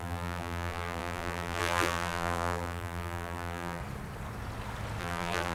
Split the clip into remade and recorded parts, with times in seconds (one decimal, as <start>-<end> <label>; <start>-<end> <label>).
0.0-3.8 remade; 3.8-5.0 recorded; 5.0-5.5 remade